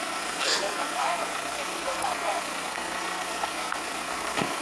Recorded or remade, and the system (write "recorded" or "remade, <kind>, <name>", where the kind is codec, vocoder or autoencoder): remade, codec, SNAC